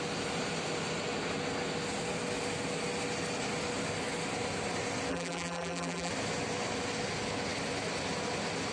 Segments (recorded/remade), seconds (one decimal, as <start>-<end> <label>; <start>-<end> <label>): 0.0-5.1 recorded; 5.1-6.1 remade; 6.1-8.7 recorded

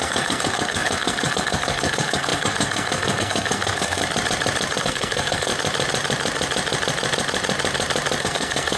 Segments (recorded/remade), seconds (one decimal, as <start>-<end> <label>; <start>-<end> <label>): 0.0-4.0 remade; 4.0-4.8 recorded; 4.8-5.5 remade; 5.5-8.2 recorded; 8.2-8.8 remade

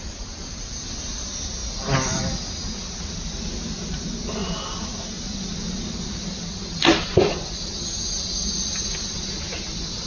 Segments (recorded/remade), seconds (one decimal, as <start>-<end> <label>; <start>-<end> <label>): 0.0-10.1 recorded

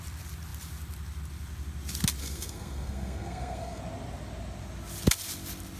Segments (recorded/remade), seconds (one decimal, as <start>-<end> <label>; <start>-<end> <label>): 0.0-2.2 recorded; 2.2-3.8 remade; 3.8-5.8 recorded

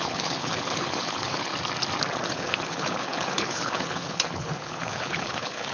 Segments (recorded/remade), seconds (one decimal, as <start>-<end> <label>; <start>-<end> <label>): 0.0-1.5 remade; 1.5-2.2 recorded; 2.2-5.7 remade

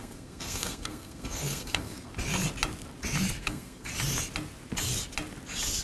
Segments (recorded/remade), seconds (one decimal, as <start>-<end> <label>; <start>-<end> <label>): 0.0-2.1 remade; 2.1-3.4 recorded; 3.4-3.9 remade; 3.9-5.8 recorded

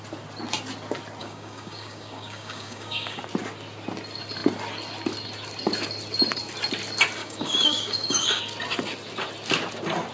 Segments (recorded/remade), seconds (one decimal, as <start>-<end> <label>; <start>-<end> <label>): 0.0-1.2 recorded; 1.2-3.2 remade; 3.2-7.2 recorded; 7.2-8.4 remade; 8.4-10.1 recorded